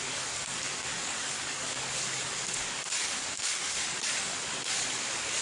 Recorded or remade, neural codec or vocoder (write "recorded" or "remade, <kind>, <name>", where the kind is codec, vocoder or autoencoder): remade, codec, DAC